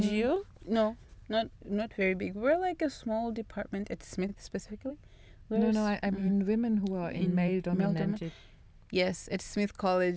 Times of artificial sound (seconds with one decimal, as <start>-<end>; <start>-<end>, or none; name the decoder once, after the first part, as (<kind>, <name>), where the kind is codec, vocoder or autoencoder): 6.2-8.7 (vocoder, BigVGAN v2)